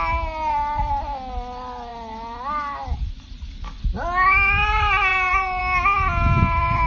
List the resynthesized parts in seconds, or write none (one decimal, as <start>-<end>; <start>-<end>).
5.1-5.6